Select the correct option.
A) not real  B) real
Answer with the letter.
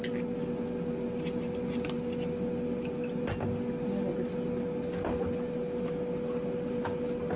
B